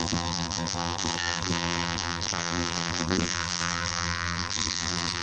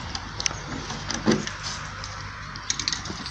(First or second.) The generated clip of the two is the first